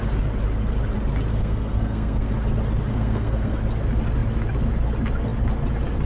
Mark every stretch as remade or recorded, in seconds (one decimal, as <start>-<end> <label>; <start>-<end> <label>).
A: 0.0-1.3 recorded; 1.3-2.3 remade; 2.3-2.9 recorded; 2.9-3.6 remade; 3.6-6.1 recorded